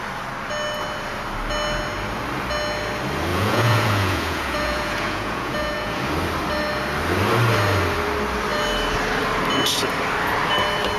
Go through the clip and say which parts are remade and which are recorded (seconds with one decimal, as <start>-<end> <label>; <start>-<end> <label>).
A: 0.0-3.3 recorded; 3.3-6.0 remade; 6.0-11.0 recorded